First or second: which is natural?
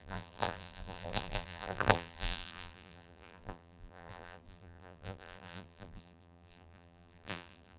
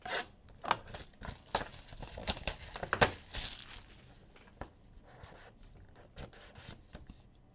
second